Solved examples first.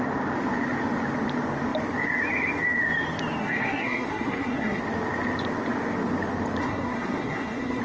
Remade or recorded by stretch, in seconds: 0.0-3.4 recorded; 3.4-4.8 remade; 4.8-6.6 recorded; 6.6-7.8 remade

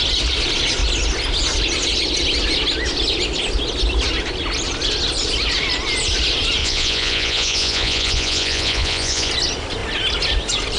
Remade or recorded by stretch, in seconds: 0.0-6.6 recorded; 6.6-9.3 remade; 9.3-10.8 recorded

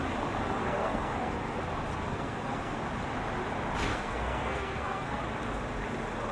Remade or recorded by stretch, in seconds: 0.0-0.6 recorded; 0.6-1.6 remade; 1.6-2.1 recorded; 2.1-2.8 remade; 2.8-3.9 recorded; 3.9-5.2 remade; 5.2-6.3 recorded

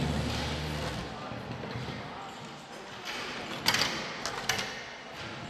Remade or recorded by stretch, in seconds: 0.0-5.5 recorded

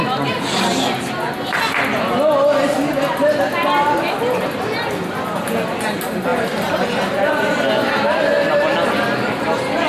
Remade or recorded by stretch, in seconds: 0.0-9.9 recorded